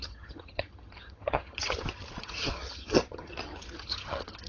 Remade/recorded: remade